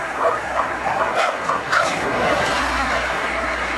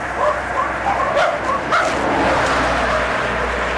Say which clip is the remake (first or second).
first